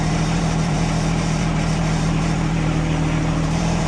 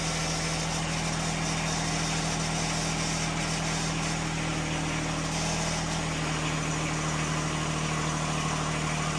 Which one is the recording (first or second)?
second